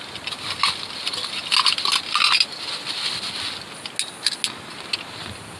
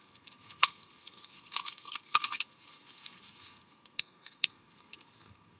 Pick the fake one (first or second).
second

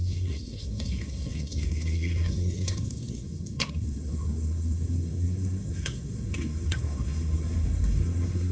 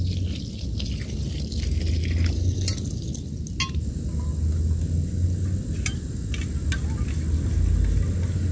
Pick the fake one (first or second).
first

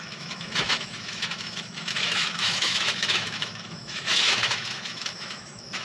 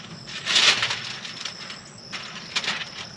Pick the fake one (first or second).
first